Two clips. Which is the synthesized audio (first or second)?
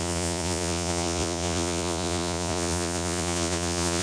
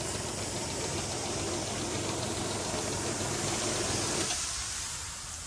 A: first